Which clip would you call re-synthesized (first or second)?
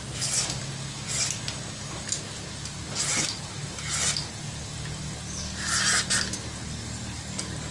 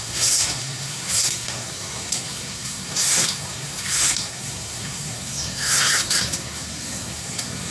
second